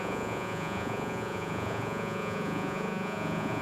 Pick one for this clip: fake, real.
fake